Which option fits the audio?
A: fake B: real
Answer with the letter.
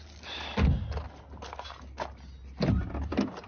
B